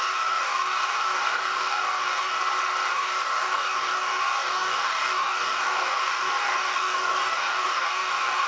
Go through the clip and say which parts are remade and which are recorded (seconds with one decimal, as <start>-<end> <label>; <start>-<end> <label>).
0.0-2.4 remade; 2.4-2.9 recorded; 2.9-8.5 remade